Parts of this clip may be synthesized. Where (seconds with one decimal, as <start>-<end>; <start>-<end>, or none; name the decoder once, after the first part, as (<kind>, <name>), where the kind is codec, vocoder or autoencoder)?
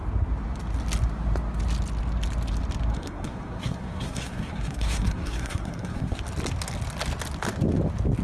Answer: 2.9-6.2 (codec, SNAC)